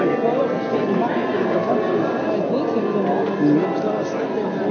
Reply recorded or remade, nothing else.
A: recorded